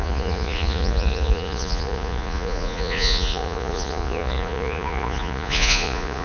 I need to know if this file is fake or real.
fake